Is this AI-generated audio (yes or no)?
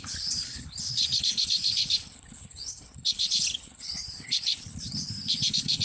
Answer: yes